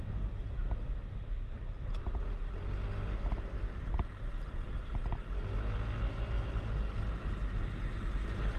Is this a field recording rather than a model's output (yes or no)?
yes